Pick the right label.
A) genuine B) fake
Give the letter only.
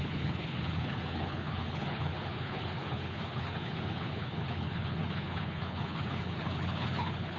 B